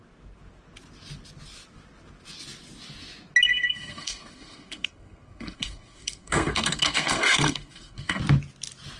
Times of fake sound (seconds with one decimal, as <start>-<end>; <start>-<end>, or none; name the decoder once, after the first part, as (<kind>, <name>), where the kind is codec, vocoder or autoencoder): 3.5-8.2 (codec, SNAC)